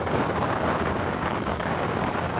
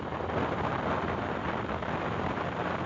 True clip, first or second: second